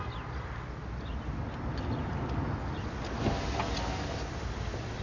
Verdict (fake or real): real